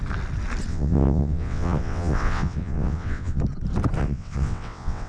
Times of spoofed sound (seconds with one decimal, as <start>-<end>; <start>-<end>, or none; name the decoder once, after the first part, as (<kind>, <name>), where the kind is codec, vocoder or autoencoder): 0.7-3.4 (vocoder, WaveNeXt); 4.0-5.1